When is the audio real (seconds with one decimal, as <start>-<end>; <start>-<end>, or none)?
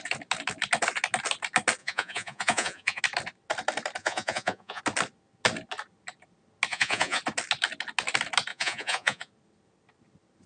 0.0-1.8; 3.0-4.0; 4.8-6.7; 7.2-8.5; 9.3-10.5